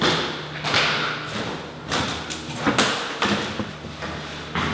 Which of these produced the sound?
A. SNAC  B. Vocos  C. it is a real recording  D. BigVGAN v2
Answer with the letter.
C